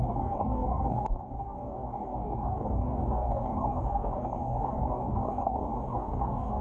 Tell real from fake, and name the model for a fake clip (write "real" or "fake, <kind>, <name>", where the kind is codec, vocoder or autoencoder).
fake, codec, DAC